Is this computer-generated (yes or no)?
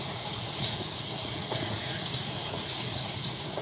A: yes